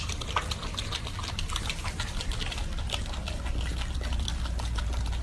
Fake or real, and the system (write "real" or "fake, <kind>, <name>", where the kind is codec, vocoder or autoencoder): real